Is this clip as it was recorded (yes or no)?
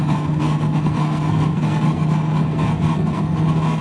no